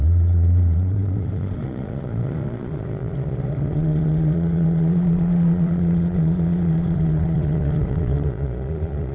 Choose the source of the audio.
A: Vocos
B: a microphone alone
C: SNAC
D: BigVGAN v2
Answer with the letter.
A